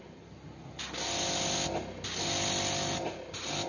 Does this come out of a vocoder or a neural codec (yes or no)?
no